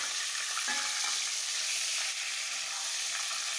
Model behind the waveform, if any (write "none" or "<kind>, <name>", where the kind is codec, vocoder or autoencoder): none